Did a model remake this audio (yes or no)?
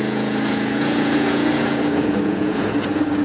yes